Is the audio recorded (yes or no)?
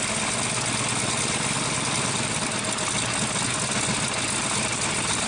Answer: yes